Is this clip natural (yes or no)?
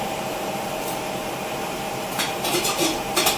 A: no